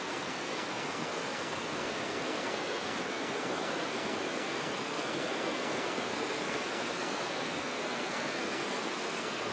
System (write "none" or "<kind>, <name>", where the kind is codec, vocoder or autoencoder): codec, SNAC